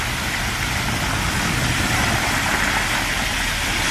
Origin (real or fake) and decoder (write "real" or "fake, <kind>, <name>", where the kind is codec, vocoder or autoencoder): real